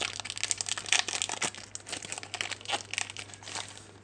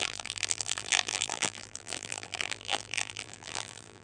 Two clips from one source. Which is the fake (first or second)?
second